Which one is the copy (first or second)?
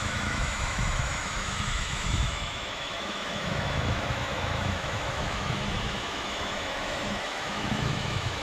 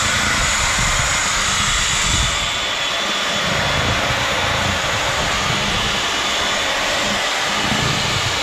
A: first